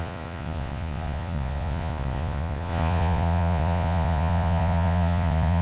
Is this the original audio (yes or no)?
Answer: no